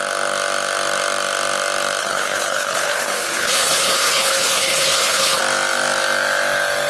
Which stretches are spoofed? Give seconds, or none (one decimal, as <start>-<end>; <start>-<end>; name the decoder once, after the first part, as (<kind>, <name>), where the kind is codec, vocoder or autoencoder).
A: 2.0-5.4 (codec, HILCodec)